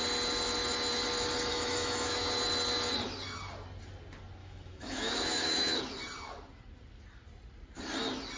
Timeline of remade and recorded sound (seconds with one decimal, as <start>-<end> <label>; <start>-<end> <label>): 0.0-1.5 recorded; 1.5-2.3 remade; 2.3-4.4 recorded; 4.4-5.8 remade; 5.8-8.4 recorded